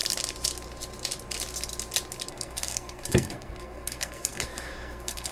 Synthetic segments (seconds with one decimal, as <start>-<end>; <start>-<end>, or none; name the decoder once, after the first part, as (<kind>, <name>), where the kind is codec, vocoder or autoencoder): 2.3-5.3 (codec, SNAC)